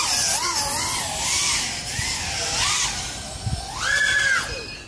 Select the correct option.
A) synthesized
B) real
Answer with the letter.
B